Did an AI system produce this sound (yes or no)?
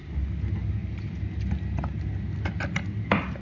no